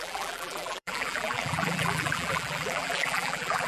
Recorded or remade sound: remade